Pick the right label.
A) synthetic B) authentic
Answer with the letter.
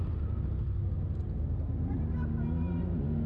B